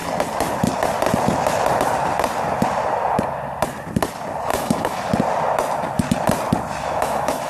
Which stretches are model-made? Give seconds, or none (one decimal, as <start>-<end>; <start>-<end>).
4.5-5.1; 6.8-7.5